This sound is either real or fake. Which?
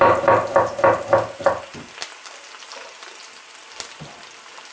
real